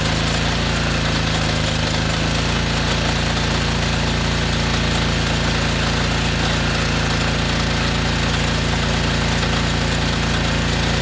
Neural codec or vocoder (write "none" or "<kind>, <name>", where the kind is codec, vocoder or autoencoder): none